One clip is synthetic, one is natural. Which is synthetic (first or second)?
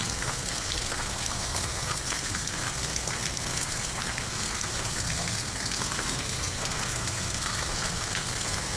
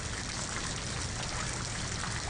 first